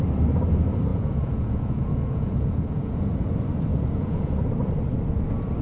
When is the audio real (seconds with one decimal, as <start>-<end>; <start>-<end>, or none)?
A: 0.0-0.9; 3.3-3.7; 4.3-5.6